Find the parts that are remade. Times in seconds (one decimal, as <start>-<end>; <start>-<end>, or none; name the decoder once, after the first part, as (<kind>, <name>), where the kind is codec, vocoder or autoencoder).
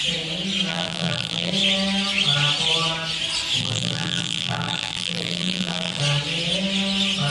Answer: 0.7-1.5 (vocoder, BigVGAN v2); 3.6-6.0